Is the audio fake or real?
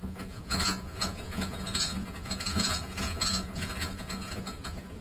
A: fake